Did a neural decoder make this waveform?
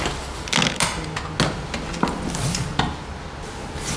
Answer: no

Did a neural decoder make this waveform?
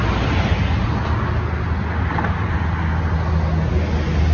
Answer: no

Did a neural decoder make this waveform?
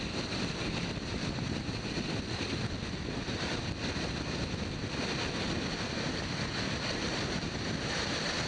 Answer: no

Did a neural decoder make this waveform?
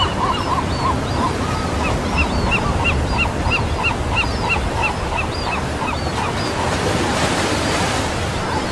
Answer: no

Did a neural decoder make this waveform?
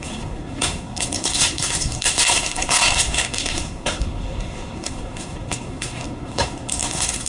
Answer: yes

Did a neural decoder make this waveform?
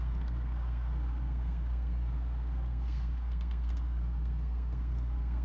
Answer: yes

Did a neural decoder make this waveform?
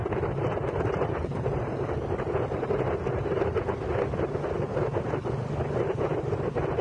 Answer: no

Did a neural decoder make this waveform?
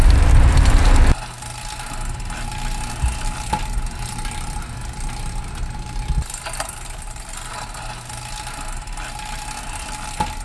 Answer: no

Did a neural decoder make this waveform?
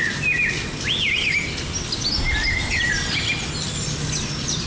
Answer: no